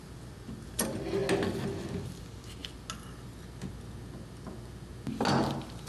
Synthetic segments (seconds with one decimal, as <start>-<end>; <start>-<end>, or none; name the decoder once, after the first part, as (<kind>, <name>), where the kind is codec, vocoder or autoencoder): none